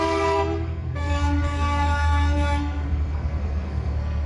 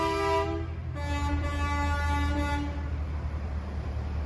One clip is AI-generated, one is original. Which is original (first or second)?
second